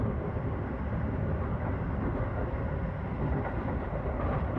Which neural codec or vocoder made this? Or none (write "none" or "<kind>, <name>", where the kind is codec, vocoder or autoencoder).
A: none